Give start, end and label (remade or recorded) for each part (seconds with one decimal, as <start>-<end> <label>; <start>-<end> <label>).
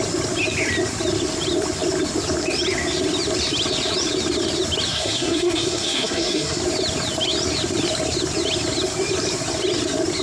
0.0-4.9 recorded; 4.9-6.6 remade; 6.6-10.2 recorded